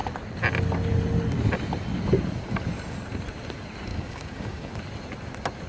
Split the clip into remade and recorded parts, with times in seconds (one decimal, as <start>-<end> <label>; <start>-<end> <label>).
0.0-3.9 recorded; 3.9-4.7 remade; 4.7-5.7 recorded